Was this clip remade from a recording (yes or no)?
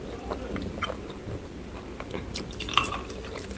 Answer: no